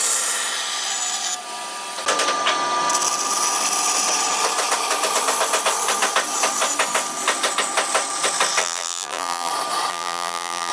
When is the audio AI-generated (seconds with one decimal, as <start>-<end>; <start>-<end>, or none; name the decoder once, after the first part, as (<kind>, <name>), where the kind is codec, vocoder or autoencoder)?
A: 8.6-9.5 (vocoder, BigVGAN v2); 9.9-10.7